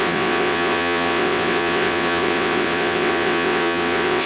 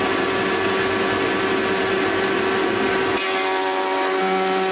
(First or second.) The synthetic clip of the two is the first